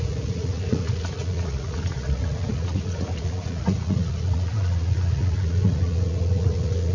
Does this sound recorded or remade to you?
remade